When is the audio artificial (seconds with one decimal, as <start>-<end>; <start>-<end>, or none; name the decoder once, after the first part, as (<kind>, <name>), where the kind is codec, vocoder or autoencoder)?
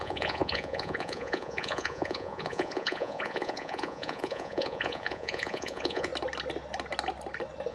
0.0-6.1 (vocoder, Vocos)